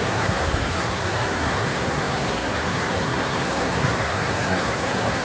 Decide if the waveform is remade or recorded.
remade